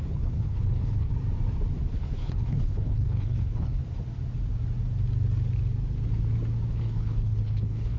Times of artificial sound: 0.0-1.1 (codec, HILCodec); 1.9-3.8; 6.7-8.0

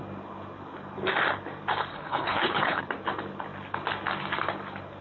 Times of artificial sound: 1.9-2.8 (codec, HILCodec)

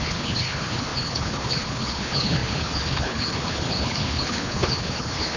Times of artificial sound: 0.0-5.4 (codec, HILCodec)

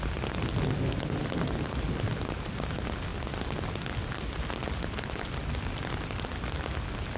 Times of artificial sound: none

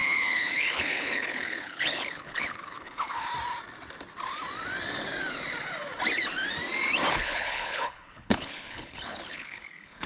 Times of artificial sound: 0.0-3.3 (codec, HILCodec); 7.1-10.1

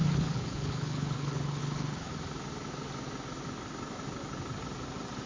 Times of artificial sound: 0.0-2.1 (codec, HILCodec)